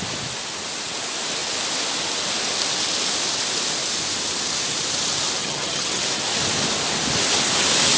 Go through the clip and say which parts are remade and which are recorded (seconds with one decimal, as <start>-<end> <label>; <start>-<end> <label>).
0.0-5.4 recorded; 5.4-6.0 remade; 6.0-8.0 recorded